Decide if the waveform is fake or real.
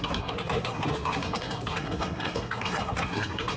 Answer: fake